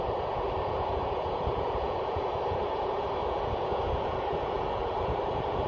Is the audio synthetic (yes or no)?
yes